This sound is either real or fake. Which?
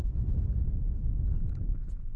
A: real